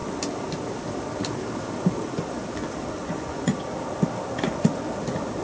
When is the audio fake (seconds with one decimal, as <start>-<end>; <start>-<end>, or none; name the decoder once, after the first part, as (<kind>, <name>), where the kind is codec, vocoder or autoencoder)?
2.9-3.5 (vocoder, Vocos)